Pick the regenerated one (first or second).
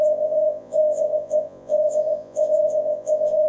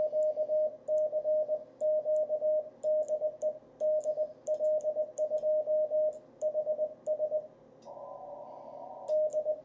first